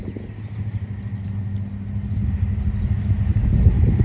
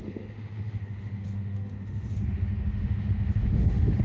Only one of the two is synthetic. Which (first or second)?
second